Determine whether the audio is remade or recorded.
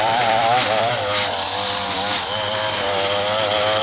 remade